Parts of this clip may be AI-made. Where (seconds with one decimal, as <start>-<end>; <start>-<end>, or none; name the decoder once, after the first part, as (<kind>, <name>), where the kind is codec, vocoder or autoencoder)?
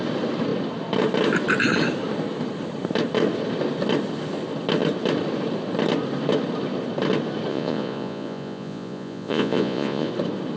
7.5-10.1 (vocoder, Vocos)